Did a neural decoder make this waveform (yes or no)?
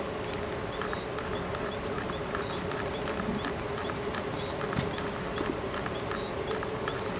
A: no